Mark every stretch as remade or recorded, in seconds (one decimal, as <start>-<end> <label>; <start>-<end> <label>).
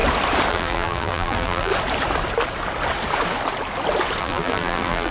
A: 0.0-0.5 recorded; 0.5-1.7 remade; 1.7-4.2 recorded; 4.2-5.1 remade